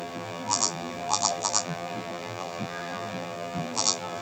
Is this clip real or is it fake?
fake